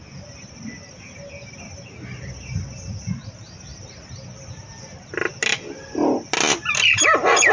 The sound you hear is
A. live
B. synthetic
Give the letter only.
A